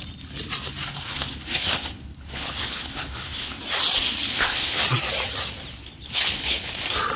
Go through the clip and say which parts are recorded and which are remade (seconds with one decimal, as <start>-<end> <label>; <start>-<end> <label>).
0.0-0.9 recorded; 0.9-3.6 remade; 3.6-4.3 recorded; 4.3-4.8 remade; 4.8-5.8 recorded; 5.8-6.8 remade; 6.8-7.2 recorded